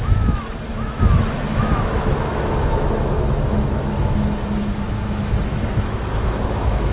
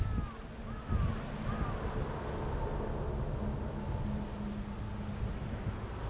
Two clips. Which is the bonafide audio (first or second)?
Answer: second